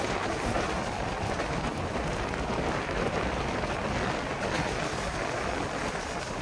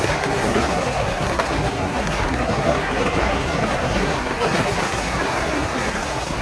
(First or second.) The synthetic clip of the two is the second